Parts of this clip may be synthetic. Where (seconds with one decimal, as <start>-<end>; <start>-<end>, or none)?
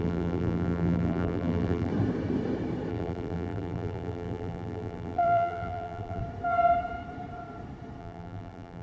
0.0-1.9; 2.9-6.2; 8.0-8.8